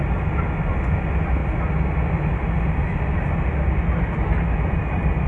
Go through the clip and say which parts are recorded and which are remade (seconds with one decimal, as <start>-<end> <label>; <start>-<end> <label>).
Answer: 0.0-5.3 recorded

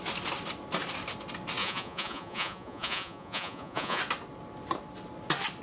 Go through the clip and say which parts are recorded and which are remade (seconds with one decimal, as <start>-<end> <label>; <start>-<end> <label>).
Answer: 0.0-1.6 recorded; 1.6-4.0 remade; 4.0-5.6 recorded

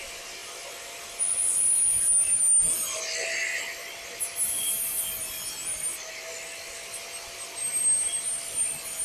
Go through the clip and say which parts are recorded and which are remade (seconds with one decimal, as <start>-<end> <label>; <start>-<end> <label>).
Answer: 0.0-9.0 recorded

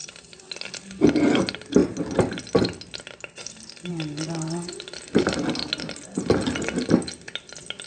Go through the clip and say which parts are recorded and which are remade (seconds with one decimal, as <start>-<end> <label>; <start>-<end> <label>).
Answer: 0.0-7.9 recorded